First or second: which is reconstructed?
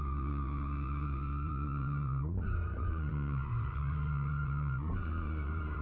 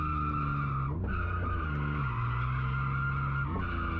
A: first